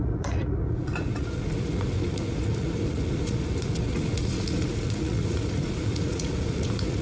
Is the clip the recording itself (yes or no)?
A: no